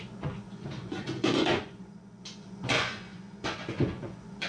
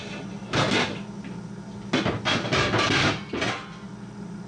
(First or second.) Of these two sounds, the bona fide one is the second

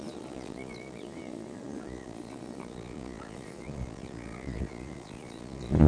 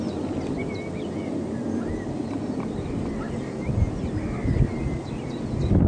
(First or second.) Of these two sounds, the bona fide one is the second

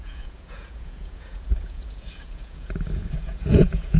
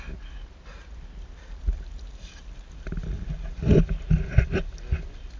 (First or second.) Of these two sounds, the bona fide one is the second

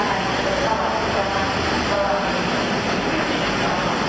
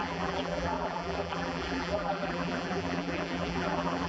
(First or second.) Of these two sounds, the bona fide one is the first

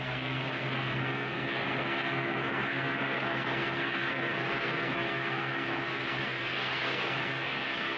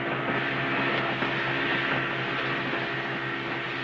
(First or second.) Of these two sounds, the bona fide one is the second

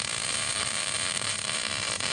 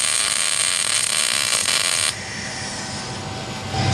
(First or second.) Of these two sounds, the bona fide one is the second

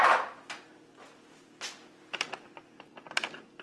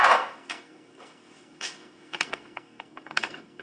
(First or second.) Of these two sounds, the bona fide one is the first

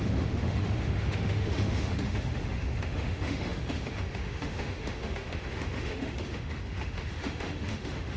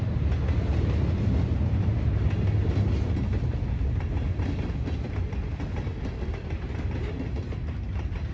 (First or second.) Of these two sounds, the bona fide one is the second